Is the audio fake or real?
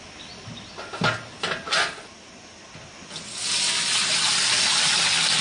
real